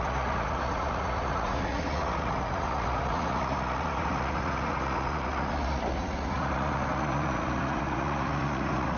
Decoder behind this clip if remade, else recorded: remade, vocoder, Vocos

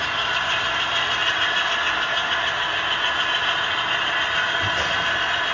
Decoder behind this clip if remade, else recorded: recorded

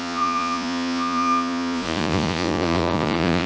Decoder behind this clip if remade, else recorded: remade, vocoder, Vocos